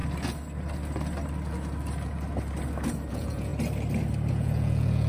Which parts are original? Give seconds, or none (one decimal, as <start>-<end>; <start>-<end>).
0.0-3.1; 3.5-4.3